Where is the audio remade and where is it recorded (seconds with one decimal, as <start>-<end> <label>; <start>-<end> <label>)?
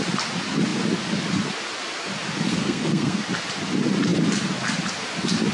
0.0-2.5 recorded; 2.5-3.2 remade; 3.2-5.5 recorded